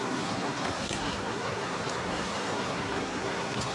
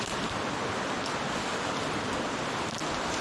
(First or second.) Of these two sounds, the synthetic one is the first